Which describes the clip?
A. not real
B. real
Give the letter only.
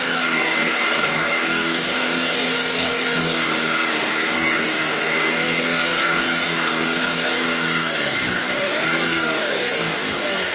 A